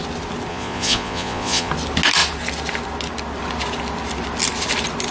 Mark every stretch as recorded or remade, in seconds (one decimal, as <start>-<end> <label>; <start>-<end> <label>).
0.0-0.5 recorded; 0.5-1.7 remade; 1.7-5.1 recorded